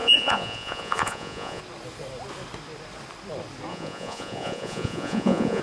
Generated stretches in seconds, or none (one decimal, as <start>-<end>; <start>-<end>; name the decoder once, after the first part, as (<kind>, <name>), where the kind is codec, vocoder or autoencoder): 0.0-1.6 (vocoder, Vocos); 3.7-5.6